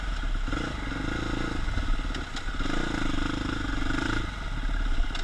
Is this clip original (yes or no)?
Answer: yes